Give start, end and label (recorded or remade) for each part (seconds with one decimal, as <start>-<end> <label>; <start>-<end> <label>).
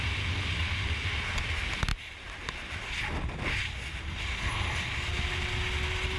0.0-6.2 recorded